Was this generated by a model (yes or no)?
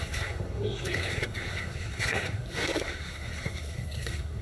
yes